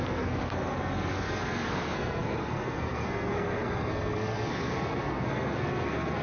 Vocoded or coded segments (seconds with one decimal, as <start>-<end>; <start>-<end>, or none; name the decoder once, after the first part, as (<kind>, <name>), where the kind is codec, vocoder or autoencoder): 0.0-6.2 (codec, SNAC)